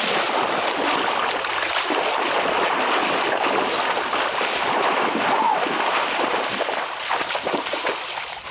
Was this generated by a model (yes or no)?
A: no